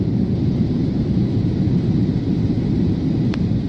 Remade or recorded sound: remade